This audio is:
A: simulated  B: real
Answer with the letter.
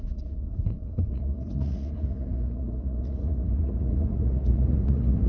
A